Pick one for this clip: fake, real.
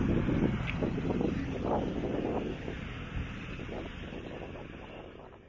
real